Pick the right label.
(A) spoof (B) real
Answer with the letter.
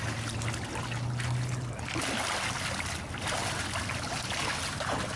B